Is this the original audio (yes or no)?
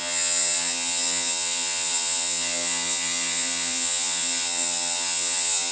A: no